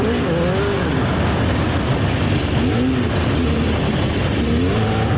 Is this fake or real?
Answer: real